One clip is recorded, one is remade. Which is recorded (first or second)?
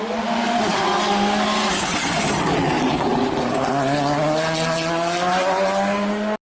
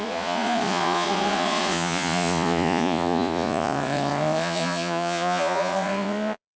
first